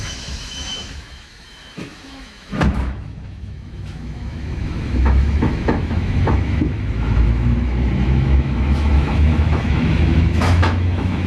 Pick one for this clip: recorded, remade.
remade